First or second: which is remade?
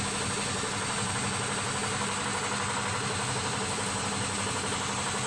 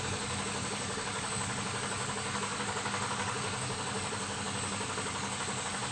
second